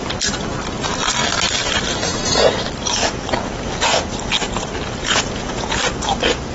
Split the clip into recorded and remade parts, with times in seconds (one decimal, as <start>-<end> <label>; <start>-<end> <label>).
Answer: 0.0-5.0 recorded; 5.0-5.8 remade; 5.8-6.5 recorded